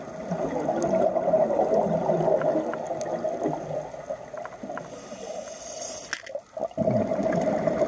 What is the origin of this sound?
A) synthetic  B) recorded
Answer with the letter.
B